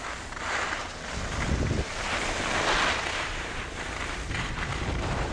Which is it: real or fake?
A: real